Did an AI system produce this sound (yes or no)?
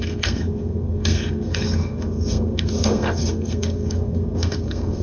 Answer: yes